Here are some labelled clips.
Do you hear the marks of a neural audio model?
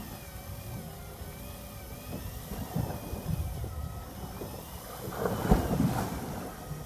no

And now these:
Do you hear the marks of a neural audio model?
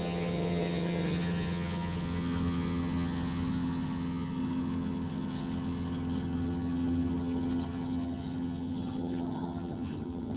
yes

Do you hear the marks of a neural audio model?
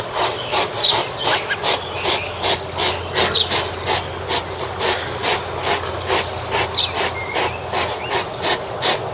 no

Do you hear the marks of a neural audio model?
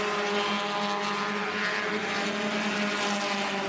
no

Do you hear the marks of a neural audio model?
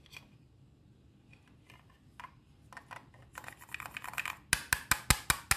no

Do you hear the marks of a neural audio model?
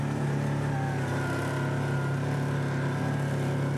no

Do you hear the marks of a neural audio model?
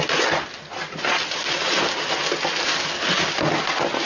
no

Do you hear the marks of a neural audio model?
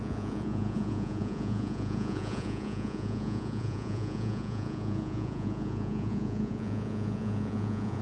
yes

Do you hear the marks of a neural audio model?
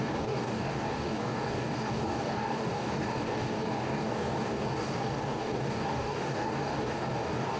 yes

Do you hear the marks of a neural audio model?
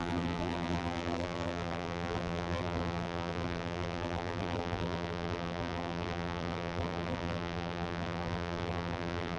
yes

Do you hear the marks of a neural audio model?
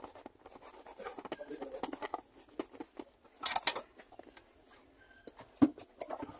no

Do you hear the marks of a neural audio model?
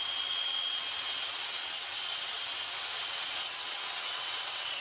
yes